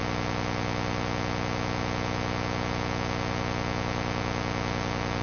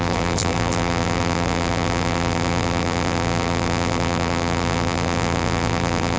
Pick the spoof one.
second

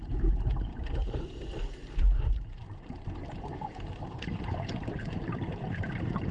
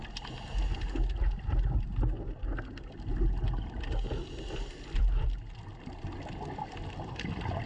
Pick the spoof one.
first